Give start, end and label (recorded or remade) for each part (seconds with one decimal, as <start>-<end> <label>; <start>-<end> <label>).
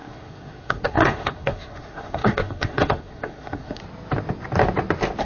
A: 0.0-3.8 remade; 3.8-5.2 recorded